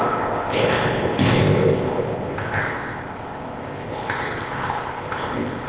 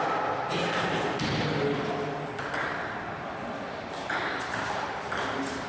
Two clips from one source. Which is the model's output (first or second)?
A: first